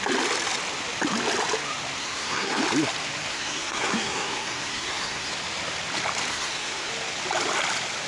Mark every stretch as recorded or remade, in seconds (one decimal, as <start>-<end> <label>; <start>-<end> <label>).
0.0-2.0 recorded; 2.0-2.6 remade; 2.6-3.3 recorded; 3.3-5.3 remade; 5.3-6.3 recorded; 6.3-6.9 remade; 6.9-8.1 recorded